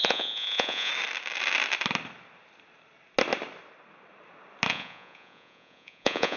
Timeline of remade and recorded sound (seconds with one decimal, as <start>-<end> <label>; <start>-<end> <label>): 0.0-0.9 remade; 0.9-4.7 recorded; 4.7-6.4 remade